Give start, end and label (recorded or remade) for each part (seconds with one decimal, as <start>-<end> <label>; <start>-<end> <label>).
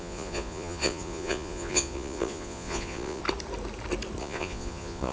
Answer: 0.0-3.2 remade; 3.2-4.2 recorded; 4.2-5.1 remade